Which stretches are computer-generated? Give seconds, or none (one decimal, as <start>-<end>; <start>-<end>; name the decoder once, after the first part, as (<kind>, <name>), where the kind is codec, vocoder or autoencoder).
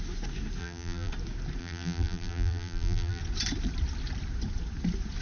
0.6-1.1 (vocoder, BigVGAN v2); 1.6-3.2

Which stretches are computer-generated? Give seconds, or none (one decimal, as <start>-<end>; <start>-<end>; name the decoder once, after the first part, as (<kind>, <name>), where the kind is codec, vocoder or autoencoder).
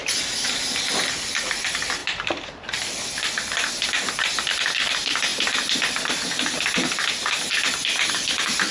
0.0-5.3 (vocoder, BigVGAN v2); 8.1-8.7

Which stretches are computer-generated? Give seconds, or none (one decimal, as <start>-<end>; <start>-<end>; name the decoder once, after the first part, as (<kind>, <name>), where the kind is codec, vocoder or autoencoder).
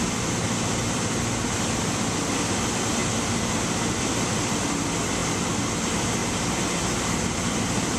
0.0-5.2 (vocoder, BigVGAN v2); 5.8-8.0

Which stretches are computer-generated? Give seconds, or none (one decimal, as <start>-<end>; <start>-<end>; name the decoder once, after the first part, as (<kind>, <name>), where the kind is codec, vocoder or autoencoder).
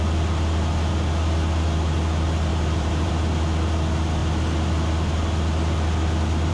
2.5-3.1 (vocoder, BigVGAN v2)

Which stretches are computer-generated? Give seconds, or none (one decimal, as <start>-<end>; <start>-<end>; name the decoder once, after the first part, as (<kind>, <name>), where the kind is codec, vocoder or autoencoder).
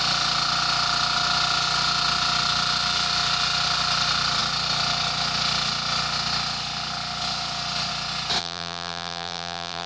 8.4-9.9 (vocoder, BigVGAN v2)